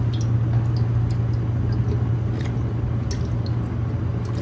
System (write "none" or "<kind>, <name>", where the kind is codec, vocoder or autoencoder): none